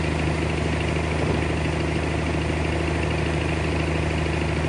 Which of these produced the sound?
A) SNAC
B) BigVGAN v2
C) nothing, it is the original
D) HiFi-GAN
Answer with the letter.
C